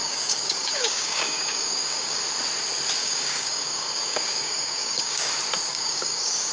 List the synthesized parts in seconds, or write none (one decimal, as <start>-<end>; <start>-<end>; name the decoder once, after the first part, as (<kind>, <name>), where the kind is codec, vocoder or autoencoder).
0.0-2.2 (codec, DAC); 3.0-5.3; 5.7-6.5